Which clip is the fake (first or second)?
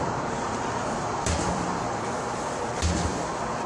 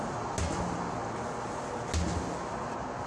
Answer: first